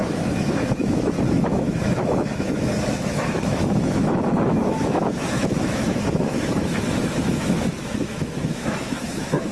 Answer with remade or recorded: remade